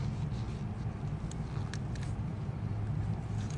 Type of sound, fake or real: real